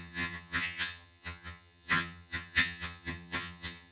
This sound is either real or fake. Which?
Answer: fake